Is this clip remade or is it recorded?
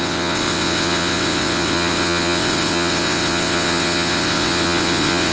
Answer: remade